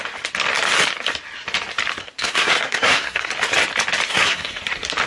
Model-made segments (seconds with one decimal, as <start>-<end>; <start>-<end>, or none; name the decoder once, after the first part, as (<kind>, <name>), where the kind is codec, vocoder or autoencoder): 2.0-3.3 (codec, SNAC); 4.1-4.6